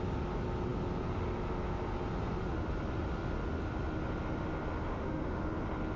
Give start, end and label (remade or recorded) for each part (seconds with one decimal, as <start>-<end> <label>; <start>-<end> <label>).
0.0-4.9 recorded; 4.9-5.4 remade; 5.4-6.0 recorded